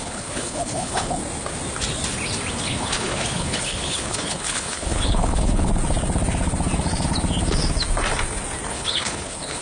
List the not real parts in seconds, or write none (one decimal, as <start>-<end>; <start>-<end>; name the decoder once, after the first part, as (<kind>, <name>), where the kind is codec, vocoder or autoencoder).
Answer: 0.0-1.2 (codec, HILCodec); 2.6-5.7; 8.7-9.6